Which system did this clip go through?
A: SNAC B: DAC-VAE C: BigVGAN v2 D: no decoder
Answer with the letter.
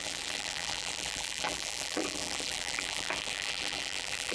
C